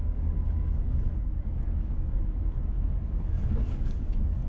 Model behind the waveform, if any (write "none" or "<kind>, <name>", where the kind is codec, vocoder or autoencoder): codec, DAC